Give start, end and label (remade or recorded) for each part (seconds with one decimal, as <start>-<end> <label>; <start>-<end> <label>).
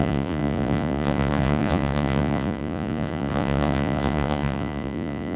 0.0-5.4 remade